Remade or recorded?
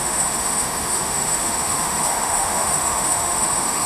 remade